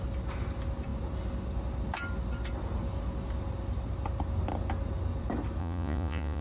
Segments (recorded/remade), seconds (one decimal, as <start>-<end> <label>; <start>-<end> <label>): 0.0-5.6 recorded; 5.6-6.4 remade